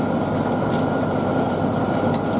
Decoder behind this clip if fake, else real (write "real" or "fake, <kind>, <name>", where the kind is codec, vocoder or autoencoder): real